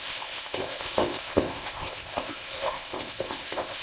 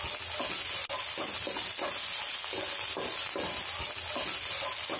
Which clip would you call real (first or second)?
second